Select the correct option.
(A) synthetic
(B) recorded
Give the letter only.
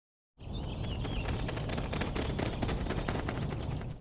B